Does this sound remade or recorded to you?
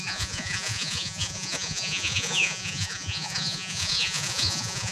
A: remade